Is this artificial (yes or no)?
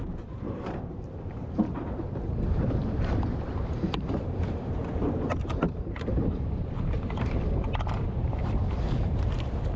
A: yes